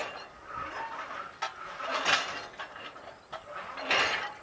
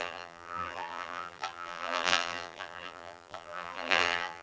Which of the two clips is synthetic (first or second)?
second